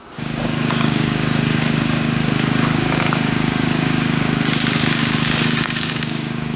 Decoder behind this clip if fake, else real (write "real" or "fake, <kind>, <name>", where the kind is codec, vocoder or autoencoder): fake, codec, DAC